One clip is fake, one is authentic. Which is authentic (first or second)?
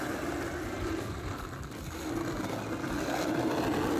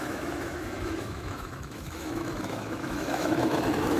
first